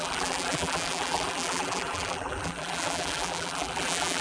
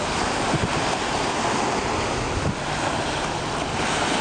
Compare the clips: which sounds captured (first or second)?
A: second